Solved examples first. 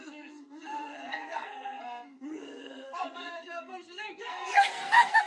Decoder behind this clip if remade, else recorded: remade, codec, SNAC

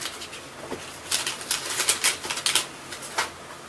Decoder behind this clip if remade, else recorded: recorded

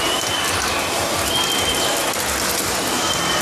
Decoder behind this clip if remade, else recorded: recorded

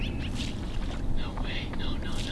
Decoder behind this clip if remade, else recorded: recorded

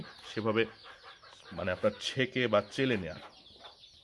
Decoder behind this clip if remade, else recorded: recorded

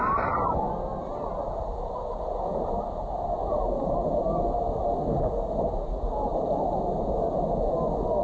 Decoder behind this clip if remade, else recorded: recorded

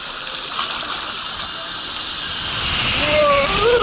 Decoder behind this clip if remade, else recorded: recorded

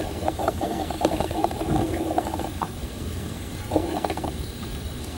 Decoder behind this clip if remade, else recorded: remade, codec, SNAC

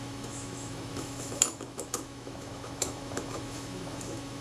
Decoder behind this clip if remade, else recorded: remade, autoencoder, DAC-VAE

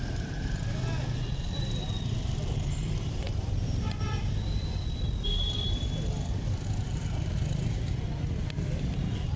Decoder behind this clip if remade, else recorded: remade, vocoder, BigVGAN v2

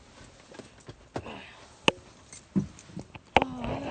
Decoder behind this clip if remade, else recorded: recorded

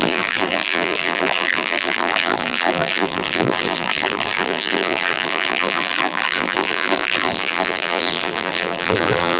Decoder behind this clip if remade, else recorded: remade, vocoder, BigVGAN v2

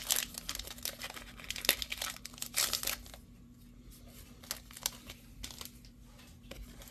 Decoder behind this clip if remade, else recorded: recorded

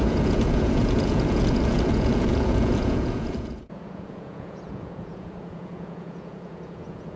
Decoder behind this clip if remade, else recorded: remade, vocoder, Vocos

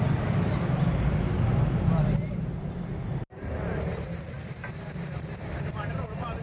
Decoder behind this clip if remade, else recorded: remade, vocoder, BigVGAN v2